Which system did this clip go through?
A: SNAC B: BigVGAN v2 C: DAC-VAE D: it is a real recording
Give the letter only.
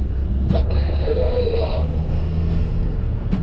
A